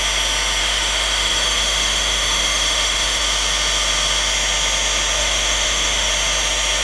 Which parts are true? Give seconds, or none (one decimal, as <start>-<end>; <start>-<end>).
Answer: 0.0-0.6; 3.2-5.2; 6.1-6.8